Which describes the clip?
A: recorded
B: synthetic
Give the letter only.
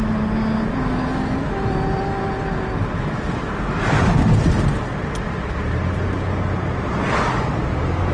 A